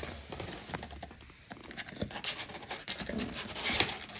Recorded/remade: recorded